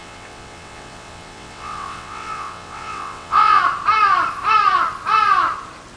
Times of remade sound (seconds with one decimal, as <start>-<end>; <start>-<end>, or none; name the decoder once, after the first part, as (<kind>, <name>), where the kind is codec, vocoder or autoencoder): 0.0-3.6 (vocoder, WaveNeXt)